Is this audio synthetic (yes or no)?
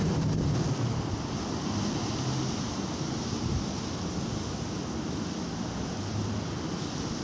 no